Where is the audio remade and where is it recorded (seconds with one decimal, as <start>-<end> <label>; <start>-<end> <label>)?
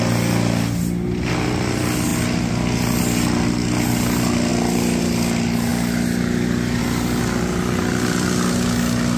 0.0-9.2 recorded